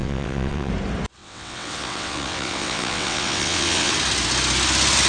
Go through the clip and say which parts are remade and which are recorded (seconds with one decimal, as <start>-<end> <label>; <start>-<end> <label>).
0.0-0.7 remade; 0.7-1.2 recorded; 1.2-3.9 remade; 3.9-5.1 recorded